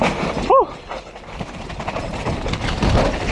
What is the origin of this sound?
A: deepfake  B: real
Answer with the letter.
B